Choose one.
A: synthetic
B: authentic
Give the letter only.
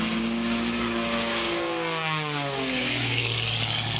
A